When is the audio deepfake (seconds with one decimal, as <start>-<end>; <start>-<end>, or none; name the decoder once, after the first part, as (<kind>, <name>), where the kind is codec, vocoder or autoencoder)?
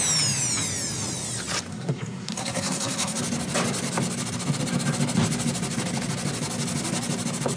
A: 1.7-3.2 (codec, SNAC)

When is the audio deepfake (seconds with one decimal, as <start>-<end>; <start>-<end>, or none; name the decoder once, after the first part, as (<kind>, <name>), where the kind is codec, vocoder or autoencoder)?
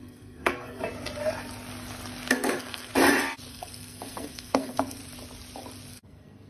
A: 0.0-0.8 (codec, SNAC); 2.3-2.9; 3.5-5.0; 5.9-6.5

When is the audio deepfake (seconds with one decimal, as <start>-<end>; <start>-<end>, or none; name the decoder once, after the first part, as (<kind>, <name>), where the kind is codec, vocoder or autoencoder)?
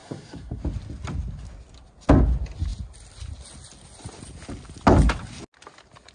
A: 0.0-0.6 (codec, SNAC)